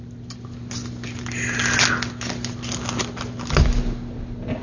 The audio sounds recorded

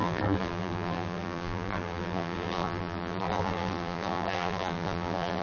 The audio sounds remade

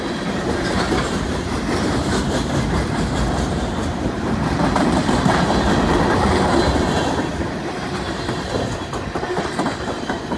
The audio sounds remade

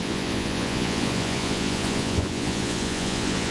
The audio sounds remade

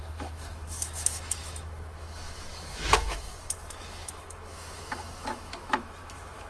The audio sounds remade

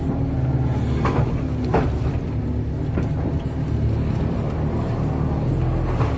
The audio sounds recorded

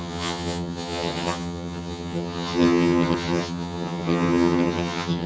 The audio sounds remade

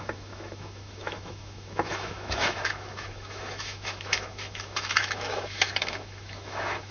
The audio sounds remade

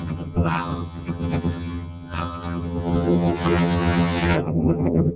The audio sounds remade